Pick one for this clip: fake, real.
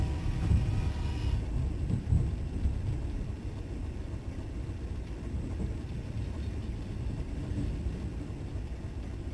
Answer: real